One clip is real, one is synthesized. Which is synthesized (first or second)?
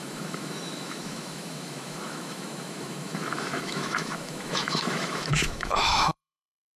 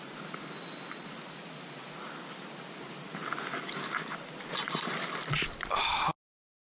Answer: first